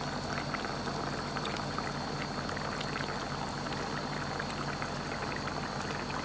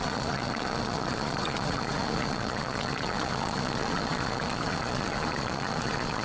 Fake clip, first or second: second